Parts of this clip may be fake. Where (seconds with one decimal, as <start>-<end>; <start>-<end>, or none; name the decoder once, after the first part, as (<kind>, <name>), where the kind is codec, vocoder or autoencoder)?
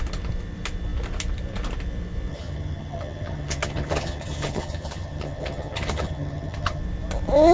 2.3-6.8 (vocoder, HiFi-GAN)